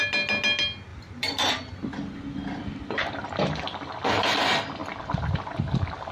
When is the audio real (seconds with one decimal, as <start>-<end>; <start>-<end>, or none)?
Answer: 0.0-0.9; 4.3-4.8; 5.6-6.1